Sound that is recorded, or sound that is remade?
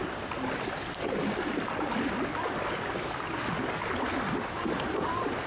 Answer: recorded